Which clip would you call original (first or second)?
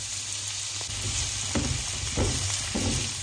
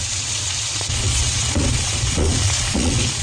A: first